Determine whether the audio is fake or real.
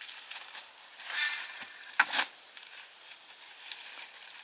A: real